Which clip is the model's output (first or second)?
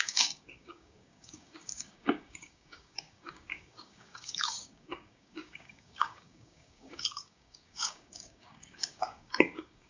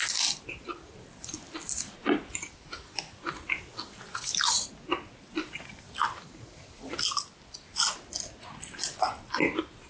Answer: first